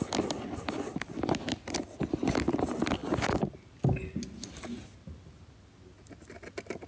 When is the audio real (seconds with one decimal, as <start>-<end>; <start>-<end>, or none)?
0.0-6.9